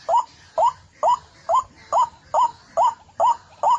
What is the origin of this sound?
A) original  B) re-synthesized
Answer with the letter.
A